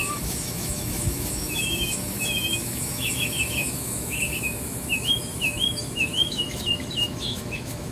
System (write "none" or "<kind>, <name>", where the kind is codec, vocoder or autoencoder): autoencoder, DAC-VAE